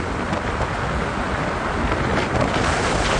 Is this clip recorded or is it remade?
recorded